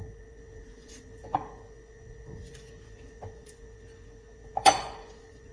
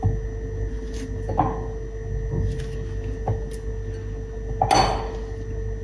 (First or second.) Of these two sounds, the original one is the second